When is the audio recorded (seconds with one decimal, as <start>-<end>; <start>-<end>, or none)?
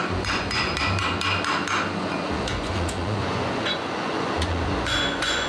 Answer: 0.7-2.0